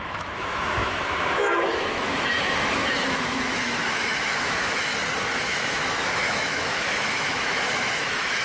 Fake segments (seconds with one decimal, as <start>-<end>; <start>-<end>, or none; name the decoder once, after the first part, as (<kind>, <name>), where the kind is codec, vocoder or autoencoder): 0.0-4.9 (autoencoder, DAC-VAE); 5.4-8.4